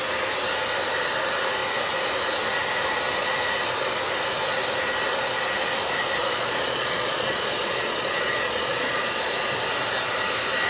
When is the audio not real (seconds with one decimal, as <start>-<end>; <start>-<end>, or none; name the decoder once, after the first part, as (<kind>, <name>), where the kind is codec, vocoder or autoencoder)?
6.2-9.2 (vocoder, Vocos)